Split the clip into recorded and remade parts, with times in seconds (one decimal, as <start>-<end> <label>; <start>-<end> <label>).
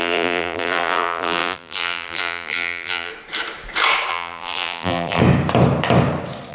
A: 0.0-3.1 remade; 3.1-4.1 recorded; 4.1-5.2 remade; 5.2-6.5 recorded